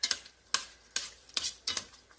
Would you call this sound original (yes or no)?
no